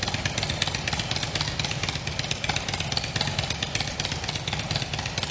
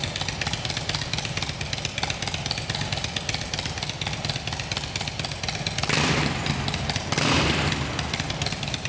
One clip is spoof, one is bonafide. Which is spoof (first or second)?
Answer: second